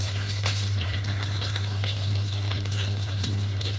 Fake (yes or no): yes